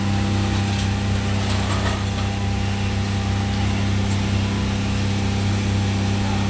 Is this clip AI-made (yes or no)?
no